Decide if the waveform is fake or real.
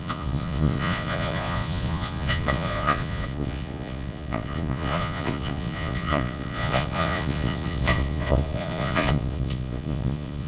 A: fake